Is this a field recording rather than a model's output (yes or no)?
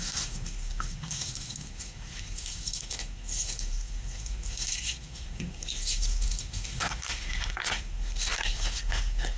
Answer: no